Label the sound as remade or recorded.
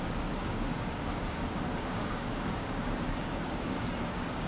remade